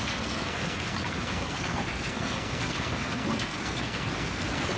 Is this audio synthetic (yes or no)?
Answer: yes